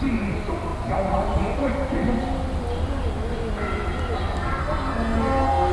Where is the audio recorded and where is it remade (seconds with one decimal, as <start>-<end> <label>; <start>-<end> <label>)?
0.0-4.6 recorded; 4.6-5.7 remade